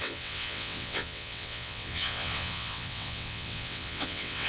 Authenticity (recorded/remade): remade